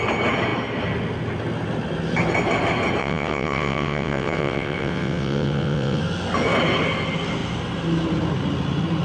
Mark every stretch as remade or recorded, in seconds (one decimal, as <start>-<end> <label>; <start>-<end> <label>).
0.0-3.0 recorded; 3.0-6.0 remade; 6.0-9.0 recorded